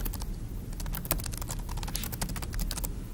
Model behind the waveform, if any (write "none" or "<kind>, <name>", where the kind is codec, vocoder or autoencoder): none